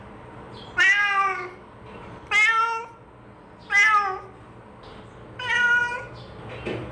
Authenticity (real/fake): real